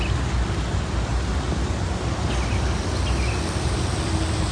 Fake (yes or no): no